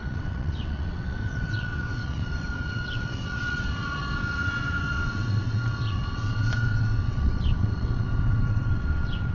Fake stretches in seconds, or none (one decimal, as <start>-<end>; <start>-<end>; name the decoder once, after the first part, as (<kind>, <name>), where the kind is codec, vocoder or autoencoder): 0.0-9.3 (vocoder, WaveNeXt)